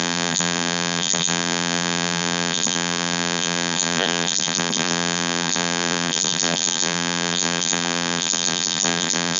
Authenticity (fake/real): fake